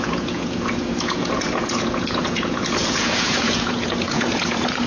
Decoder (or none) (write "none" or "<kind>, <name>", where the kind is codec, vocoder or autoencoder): vocoder, Vocos